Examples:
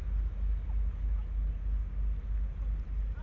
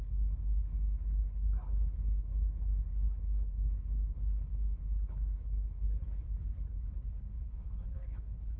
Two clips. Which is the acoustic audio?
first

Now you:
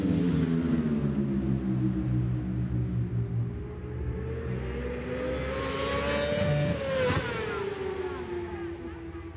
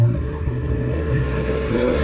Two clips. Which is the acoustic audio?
first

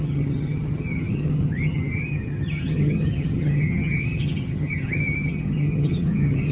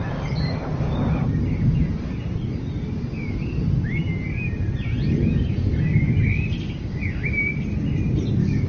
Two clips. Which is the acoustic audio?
second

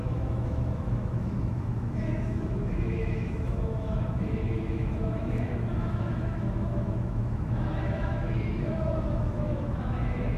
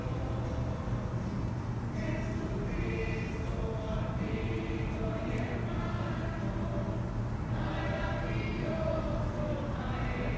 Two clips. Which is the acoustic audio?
second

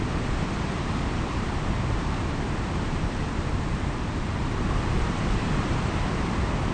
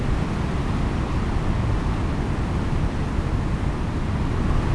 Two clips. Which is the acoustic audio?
second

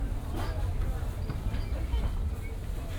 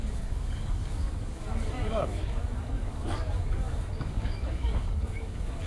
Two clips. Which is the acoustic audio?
first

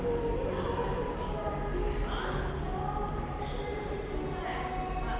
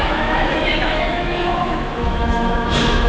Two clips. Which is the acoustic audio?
first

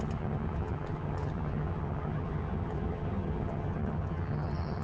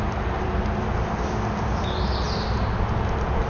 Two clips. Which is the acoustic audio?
second